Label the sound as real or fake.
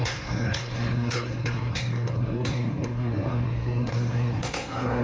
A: fake